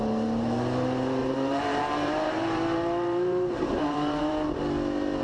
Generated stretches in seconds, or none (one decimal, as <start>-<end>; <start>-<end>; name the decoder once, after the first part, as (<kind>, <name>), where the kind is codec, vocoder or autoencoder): 1.2-4.3 (vocoder, BigVGAN v2)